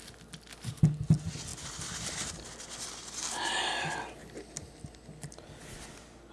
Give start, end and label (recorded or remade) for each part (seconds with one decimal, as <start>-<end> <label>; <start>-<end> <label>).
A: 0.0-1.5 recorded; 1.5-2.3 remade; 2.3-4.2 recorded; 4.2-5.7 remade; 5.7-6.3 recorded